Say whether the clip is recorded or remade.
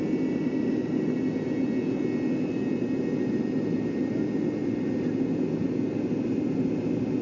recorded